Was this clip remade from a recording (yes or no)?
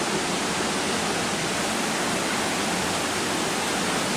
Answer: no